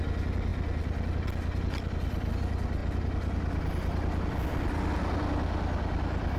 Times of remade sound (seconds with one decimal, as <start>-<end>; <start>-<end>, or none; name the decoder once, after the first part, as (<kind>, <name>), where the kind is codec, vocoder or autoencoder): none